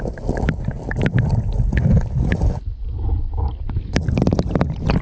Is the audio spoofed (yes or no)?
no